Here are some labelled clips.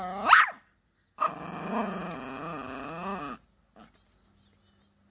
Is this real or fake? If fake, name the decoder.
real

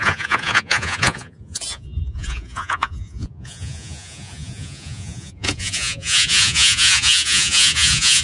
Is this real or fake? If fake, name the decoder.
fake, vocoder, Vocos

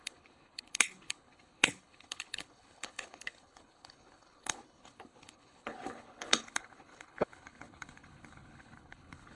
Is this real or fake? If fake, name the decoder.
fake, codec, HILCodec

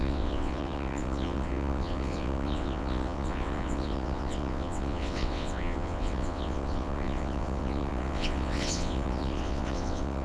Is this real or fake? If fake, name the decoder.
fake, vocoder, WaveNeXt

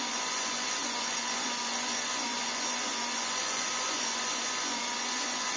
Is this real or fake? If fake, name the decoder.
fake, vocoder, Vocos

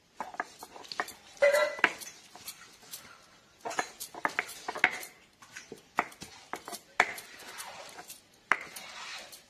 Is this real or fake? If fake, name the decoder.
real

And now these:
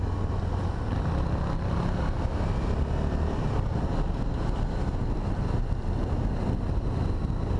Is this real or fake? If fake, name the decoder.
real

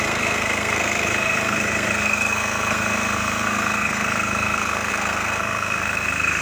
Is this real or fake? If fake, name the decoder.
fake, codec, SNAC